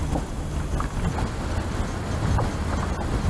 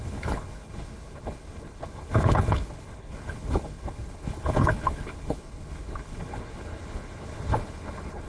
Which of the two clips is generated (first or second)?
second